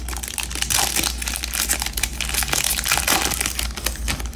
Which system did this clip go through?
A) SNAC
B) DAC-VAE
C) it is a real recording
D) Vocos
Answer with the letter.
C